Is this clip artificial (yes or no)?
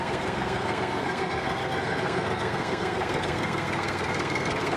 yes